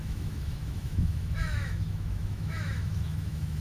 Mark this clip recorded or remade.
remade